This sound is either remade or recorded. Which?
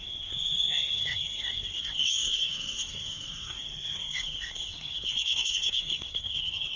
remade